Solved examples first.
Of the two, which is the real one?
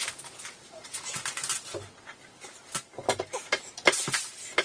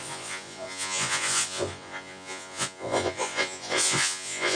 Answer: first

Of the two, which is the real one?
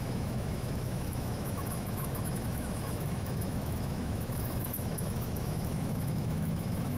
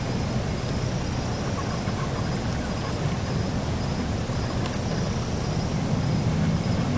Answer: second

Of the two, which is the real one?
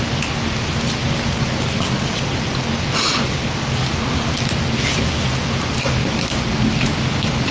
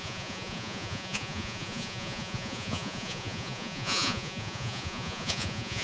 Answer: first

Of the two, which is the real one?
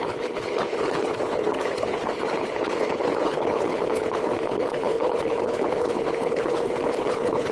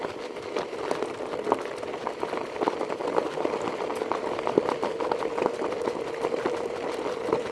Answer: second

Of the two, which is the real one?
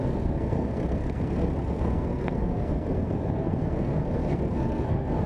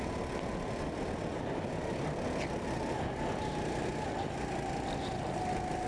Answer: second